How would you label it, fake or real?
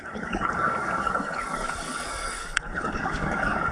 fake